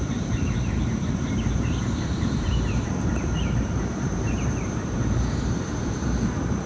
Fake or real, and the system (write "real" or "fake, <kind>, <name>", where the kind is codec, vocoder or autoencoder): fake, vocoder, BigVGAN v2